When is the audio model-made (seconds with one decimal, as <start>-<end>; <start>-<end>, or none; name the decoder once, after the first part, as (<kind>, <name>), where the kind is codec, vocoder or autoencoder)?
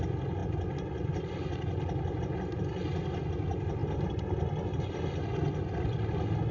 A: none